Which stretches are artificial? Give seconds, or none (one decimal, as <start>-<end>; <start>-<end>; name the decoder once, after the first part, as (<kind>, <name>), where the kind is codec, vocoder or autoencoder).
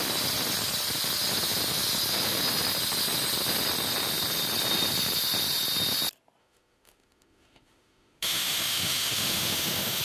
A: 6.4-10.0 (autoencoder, DAC-VAE)